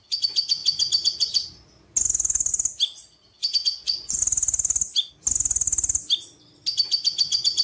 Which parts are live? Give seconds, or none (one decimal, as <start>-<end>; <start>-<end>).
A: 0.0-3.4; 4.2-7.6